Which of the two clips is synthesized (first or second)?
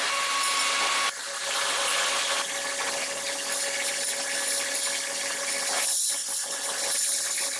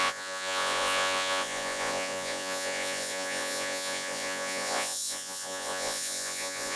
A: second